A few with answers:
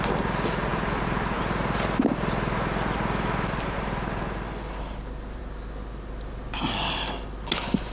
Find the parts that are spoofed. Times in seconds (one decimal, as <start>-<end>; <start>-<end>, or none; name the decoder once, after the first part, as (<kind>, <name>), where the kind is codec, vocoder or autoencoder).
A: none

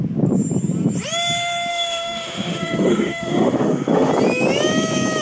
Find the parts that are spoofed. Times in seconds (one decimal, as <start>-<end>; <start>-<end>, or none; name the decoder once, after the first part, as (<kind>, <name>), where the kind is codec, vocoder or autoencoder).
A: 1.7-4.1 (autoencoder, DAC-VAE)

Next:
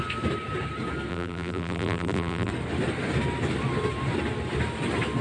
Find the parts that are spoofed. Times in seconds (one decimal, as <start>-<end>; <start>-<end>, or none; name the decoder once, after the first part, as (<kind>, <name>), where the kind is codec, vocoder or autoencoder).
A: 1.1-2.5 (vocoder, BigVGAN v2)

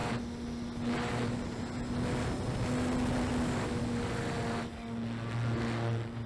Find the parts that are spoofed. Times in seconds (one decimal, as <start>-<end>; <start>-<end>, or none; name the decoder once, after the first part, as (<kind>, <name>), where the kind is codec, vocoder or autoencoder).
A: none